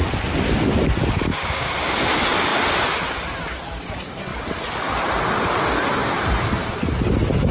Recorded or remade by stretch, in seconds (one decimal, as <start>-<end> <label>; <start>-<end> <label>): 0.0-1.3 recorded; 1.3-2.0 remade; 2.0-7.5 recorded